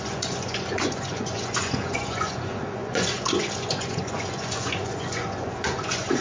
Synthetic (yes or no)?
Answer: yes